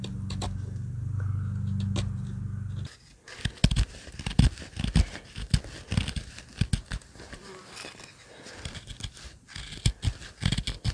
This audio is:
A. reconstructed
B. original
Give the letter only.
B